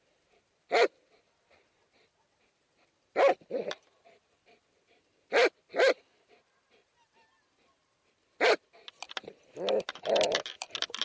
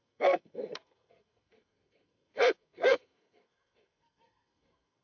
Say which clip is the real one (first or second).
first